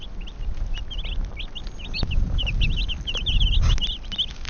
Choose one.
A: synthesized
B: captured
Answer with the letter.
B